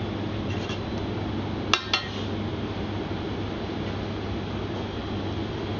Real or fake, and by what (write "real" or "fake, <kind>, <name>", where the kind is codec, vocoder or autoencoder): real